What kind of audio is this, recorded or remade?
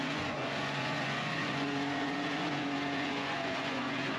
remade